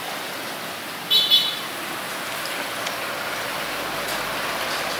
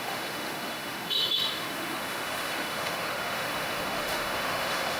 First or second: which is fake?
second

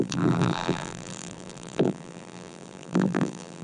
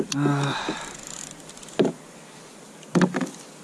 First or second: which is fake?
first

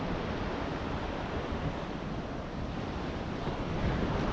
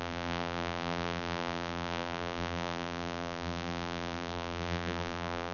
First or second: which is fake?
second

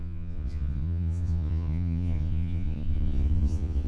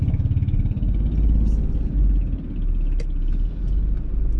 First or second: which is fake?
first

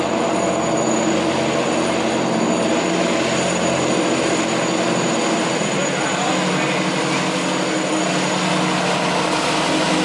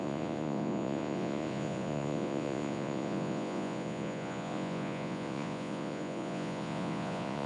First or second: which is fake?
second